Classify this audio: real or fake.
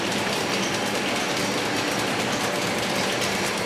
real